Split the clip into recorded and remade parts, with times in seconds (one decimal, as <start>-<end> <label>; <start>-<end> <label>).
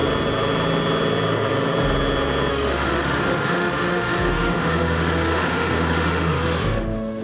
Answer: 0.0-2.5 recorded; 2.5-7.2 remade